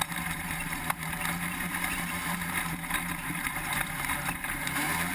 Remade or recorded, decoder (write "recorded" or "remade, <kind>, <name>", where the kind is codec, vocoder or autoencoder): remade, vocoder, BigVGAN v2